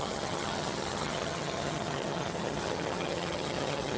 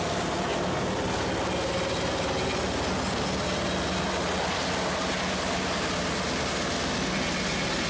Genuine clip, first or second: second